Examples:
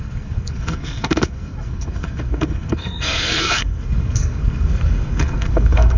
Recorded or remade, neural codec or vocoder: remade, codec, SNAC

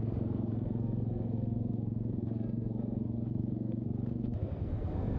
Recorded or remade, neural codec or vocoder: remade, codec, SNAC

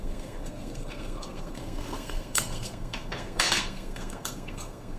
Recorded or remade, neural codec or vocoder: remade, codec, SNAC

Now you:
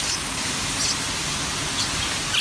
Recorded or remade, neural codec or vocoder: recorded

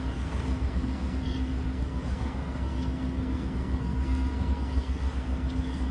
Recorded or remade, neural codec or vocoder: remade, codec, SNAC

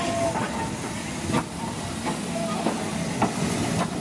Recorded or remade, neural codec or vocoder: recorded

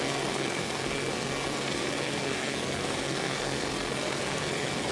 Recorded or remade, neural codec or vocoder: remade, codec, SNAC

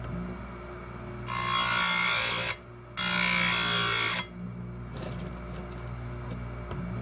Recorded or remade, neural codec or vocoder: recorded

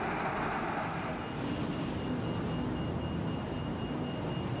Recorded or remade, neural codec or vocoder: recorded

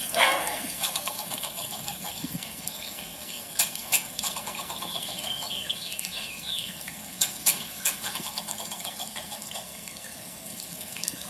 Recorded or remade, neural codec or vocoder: remade, codec, SNAC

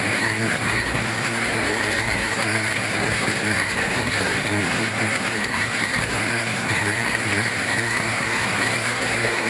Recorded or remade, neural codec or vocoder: remade, codec, SNAC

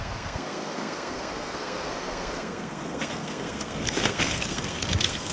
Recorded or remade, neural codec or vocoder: remade, codec, SNAC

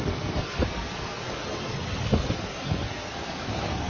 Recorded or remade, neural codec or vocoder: remade, codec, SNAC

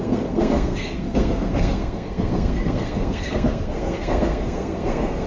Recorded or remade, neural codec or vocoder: remade, codec, SNAC